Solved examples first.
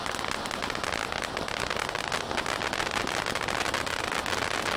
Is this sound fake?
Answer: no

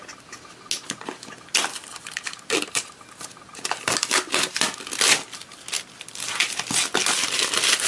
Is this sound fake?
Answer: no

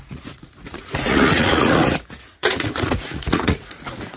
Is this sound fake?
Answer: yes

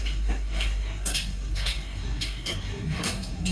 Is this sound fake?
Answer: yes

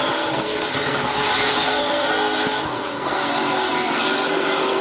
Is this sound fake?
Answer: yes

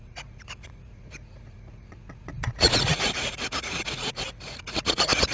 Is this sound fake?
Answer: yes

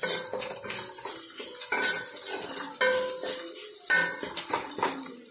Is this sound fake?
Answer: no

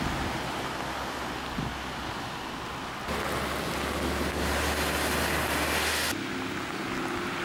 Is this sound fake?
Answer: no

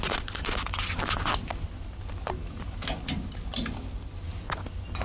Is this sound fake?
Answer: no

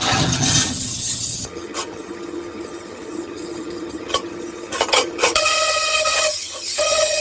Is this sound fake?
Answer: yes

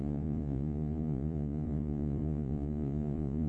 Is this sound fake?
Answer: yes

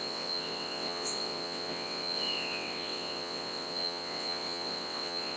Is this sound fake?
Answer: yes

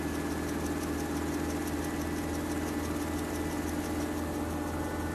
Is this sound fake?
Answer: no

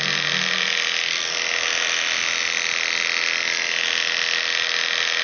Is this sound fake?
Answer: no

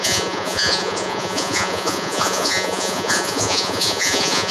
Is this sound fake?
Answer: yes